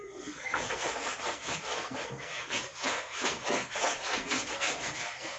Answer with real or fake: fake